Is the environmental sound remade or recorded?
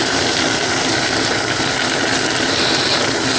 recorded